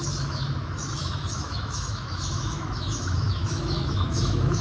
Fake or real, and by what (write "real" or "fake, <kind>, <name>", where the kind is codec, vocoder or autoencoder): fake, autoencoder, DAC-VAE